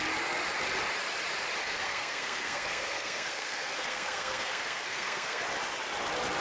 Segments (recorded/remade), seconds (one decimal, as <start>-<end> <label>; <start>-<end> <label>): 0.0-1.6 recorded; 1.6-5.4 remade; 5.4-6.4 recorded